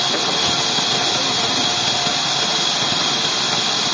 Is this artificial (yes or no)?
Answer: no